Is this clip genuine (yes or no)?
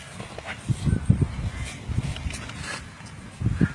yes